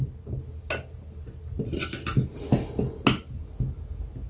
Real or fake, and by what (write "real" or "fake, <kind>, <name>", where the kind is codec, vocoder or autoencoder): real